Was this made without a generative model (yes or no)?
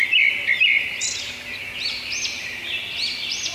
yes